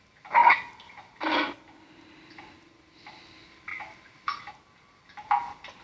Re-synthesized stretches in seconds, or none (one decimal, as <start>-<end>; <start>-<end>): none